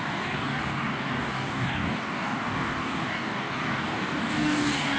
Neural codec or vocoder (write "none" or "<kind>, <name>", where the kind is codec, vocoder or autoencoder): codec, DAC